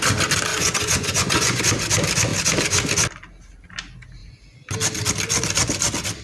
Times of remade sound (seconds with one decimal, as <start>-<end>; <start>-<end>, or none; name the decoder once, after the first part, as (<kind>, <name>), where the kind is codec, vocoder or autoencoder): 0.5-1.6 (vocoder, Vocos)

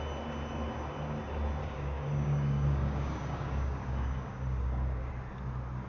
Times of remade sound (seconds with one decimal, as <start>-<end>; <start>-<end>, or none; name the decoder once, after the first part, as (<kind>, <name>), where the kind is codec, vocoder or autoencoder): 1.6-5.1 (codec, DAC)

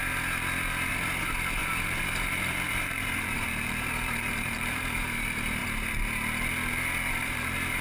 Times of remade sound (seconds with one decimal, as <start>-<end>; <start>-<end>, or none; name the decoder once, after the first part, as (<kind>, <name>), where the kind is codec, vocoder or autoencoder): 0.9-5.6 (vocoder, BigVGAN v2); 7.1-7.8

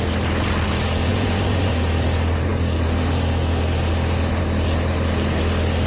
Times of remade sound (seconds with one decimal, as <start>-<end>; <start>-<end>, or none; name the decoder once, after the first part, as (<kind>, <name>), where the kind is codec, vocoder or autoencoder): 1.1-1.7 (vocoder, Vocos)

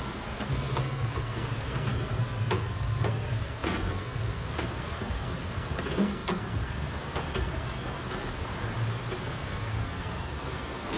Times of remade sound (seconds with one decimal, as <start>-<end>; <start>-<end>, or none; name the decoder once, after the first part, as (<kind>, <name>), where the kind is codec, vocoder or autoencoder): 0.0-8.5 (codec, SNAC); 9.2-11.0